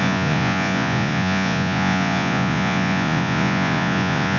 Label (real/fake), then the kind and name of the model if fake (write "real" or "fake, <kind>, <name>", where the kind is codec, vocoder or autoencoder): fake, vocoder, Vocos